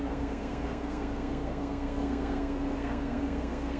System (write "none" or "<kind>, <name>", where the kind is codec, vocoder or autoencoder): codec, SNAC